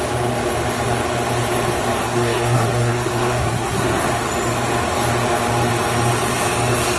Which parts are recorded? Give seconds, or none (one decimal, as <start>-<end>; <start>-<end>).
0.0-2.0; 4.1-7.0